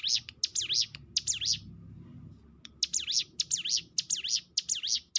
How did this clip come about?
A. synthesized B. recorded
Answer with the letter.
B